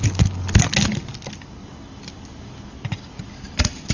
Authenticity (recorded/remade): recorded